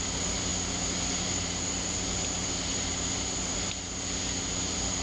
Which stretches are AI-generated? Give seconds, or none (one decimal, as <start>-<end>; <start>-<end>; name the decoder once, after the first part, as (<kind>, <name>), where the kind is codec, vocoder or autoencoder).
0.0-0.5 (vocoder, BigVGAN v2); 1.1-5.0